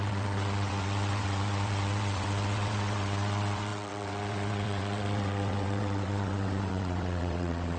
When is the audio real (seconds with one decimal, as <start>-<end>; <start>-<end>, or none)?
none